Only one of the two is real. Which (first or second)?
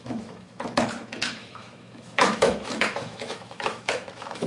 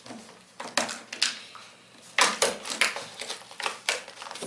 second